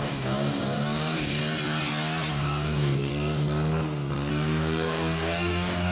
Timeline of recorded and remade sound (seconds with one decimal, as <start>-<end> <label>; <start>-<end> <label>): 0.0-1.4 remade; 1.4-2.3 recorded; 2.3-3.1 remade; 3.1-4.3 recorded; 4.3-5.9 remade